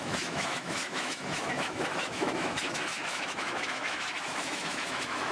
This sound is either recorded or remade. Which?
remade